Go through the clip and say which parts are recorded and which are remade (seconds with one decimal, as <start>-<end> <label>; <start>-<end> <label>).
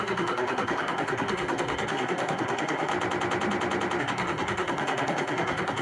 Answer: 0.0-2.9 remade; 2.9-4.0 recorded; 4.0-5.8 remade